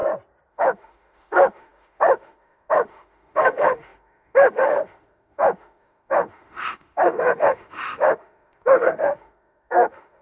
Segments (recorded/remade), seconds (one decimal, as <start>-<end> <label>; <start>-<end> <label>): 0.0-0.5 recorded; 0.5-10.2 remade